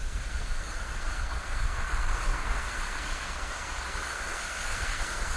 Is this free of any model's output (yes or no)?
no